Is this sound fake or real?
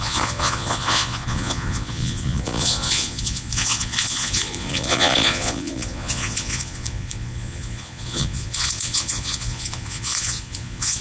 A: fake